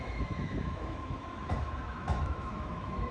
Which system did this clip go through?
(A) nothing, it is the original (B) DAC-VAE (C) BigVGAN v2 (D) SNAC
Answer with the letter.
B